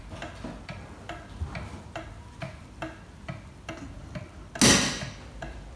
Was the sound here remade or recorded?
recorded